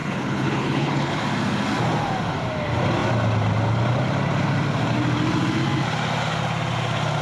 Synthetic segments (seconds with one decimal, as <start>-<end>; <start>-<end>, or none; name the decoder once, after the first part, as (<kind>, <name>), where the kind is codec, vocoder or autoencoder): 0.0-1.2 (codec, HILCodec)